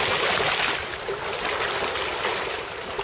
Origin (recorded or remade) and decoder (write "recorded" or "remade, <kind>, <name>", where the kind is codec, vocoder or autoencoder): recorded